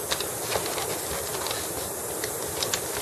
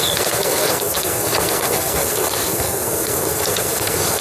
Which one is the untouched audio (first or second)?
first